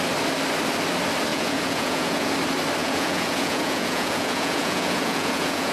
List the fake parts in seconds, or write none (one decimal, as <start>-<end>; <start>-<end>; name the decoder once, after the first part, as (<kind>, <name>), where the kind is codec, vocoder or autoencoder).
1.3-2.3 (vocoder, Vocos); 2.8-5.7